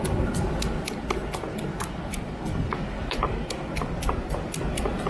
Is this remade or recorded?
recorded